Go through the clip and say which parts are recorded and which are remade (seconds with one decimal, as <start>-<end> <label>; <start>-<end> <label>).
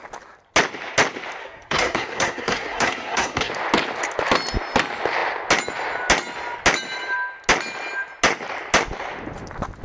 0.0-1.4 recorded; 1.4-3.5 remade; 3.5-9.8 recorded